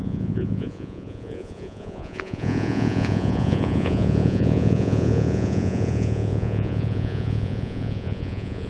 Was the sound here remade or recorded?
remade